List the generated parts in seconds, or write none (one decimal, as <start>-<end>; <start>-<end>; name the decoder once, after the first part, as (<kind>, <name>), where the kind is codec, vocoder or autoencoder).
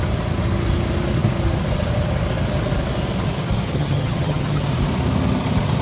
3.7-4.6 (vocoder, HiFi-GAN)